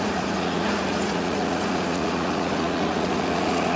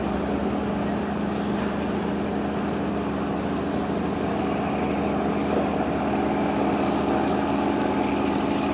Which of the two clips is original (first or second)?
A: second